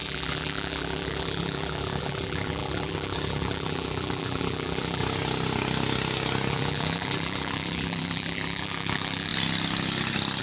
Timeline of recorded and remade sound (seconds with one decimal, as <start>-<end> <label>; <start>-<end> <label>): 0.0-5.0 remade; 5.0-6.5 recorded; 6.5-9.3 remade; 9.3-10.4 recorded